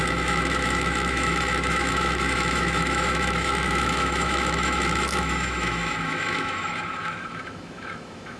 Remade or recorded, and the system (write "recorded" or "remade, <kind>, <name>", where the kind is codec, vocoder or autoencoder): remade, autoencoder, DAC-VAE